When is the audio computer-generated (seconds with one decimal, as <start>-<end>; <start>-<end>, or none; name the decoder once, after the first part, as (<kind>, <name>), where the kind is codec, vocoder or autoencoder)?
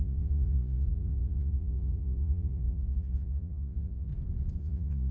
0.0-4.1 (vocoder, Vocos); 4.6-5.1